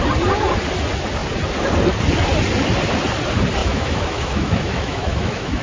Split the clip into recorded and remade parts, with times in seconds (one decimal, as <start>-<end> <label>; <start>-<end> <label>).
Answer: 0.0-3.6 recorded; 3.6-5.6 remade